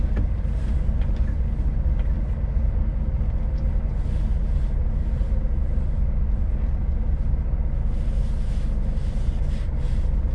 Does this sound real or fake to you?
real